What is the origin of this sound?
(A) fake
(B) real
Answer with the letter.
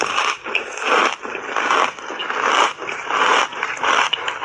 A